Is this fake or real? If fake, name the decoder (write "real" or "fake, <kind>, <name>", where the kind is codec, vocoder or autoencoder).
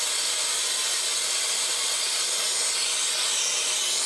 real